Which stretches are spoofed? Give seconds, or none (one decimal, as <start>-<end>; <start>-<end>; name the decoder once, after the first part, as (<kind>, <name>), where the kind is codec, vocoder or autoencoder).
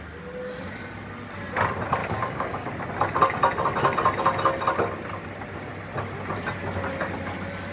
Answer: 2.0-2.7 (codec, DAC)